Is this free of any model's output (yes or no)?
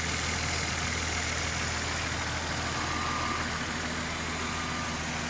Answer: yes